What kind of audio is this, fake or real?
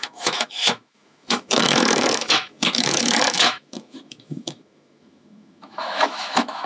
fake